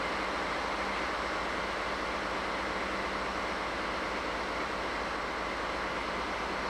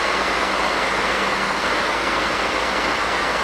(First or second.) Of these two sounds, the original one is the first